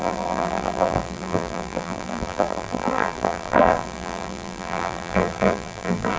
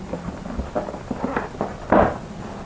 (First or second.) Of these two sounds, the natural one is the second